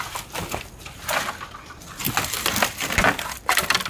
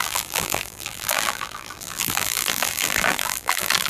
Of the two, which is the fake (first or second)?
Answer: second